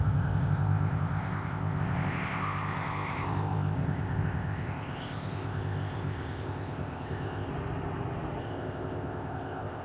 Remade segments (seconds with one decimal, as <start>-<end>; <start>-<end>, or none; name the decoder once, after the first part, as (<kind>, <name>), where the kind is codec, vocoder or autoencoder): 0.0-7.5 (codec, ZipCodec); 8.4-9.8